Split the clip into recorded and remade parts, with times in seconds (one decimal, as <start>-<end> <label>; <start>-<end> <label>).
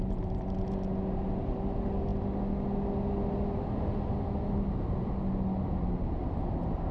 0.0-6.9 recorded